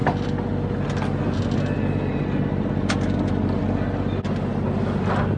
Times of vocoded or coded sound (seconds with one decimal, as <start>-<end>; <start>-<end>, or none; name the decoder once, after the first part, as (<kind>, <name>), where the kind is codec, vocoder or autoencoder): none